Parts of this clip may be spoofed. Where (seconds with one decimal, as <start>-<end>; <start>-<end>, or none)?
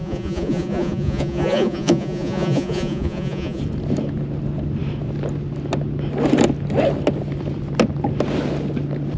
0.0-3.6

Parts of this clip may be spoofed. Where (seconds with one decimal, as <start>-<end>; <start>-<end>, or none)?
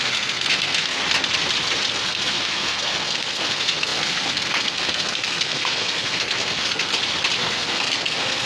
0.0-1.0; 1.9-6.9; 7.4-8.5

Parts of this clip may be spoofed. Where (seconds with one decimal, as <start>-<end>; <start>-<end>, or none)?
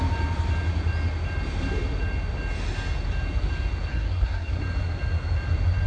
3.9-4.6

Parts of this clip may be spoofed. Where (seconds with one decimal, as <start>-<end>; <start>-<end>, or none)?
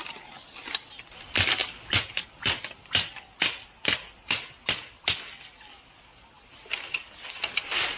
none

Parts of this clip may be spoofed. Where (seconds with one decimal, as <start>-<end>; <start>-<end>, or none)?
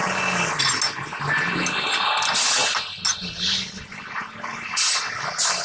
none